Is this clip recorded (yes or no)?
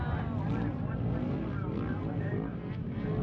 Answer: yes